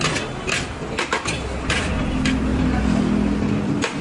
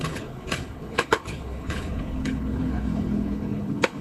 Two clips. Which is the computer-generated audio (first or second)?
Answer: second